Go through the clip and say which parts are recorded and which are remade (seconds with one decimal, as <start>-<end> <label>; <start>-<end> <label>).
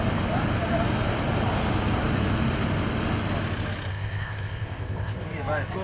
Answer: 0.0-3.9 recorded; 3.9-5.2 remade; 5.2-5.8 recorded